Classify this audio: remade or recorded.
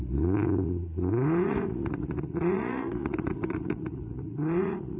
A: remade